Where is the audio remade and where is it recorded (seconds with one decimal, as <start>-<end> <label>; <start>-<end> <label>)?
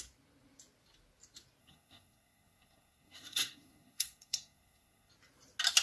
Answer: 0.0-1.6 recorded; 1.6-5.1 remade; 5.1-5.8 recorded